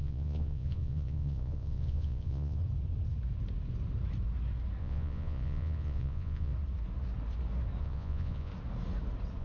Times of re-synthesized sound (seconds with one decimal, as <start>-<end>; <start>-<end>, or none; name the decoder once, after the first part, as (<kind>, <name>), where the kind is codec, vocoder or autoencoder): 0.0-2.6 (vocoder, Vocos); 4.8-6.5; 7.8-8.5